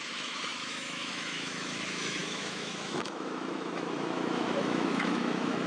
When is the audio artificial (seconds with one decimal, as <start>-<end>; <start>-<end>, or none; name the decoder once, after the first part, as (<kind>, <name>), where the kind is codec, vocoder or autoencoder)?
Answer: 0.0-5.7 (autoencoder, DAC-VAE)